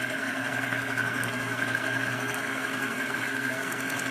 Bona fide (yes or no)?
no